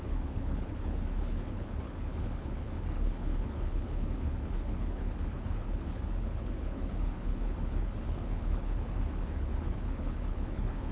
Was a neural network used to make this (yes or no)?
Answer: yes